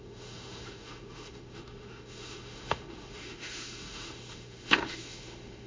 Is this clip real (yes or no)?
no